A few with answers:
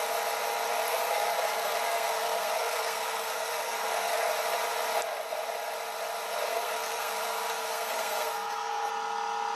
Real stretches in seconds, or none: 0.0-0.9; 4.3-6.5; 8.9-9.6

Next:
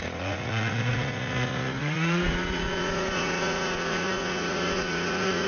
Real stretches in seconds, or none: none

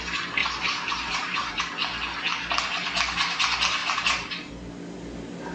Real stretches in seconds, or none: 0.0-0.4; 1.6-3.8; 4.5-5.5